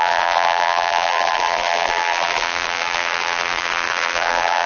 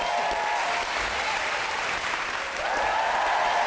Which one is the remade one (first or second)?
first